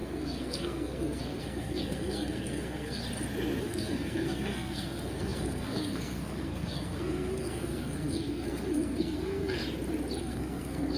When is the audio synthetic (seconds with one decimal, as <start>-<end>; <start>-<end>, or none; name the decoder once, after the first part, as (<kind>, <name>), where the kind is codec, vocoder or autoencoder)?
0.0-3.0 (codec, SNAC); 3.6-9.6; 10.2-11.0